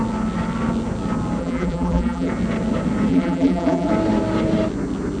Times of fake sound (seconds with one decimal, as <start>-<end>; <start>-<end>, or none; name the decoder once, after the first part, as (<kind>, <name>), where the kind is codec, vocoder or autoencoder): 1.4-2.3 (vocoder, BigVGAN v2); 3.1-3.9